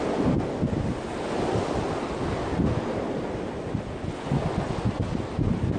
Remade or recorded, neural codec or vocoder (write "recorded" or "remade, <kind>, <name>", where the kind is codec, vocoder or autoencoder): recorded